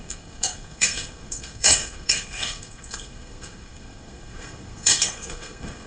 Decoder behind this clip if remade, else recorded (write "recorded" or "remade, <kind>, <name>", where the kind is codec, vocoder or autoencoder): remade, codec, SNAC